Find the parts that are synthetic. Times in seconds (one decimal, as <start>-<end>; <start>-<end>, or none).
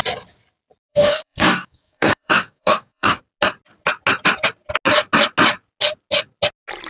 0.9-3.2